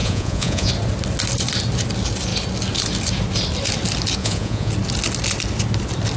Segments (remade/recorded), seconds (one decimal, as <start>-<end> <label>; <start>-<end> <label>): 0.0-0.7 remade; 0.7-4.2 recorded; 4.2-4.7 remade; 4.7-6.2 recorded